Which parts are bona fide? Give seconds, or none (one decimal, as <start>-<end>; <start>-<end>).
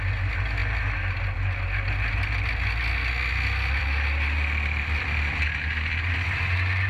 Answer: 0.0-6.9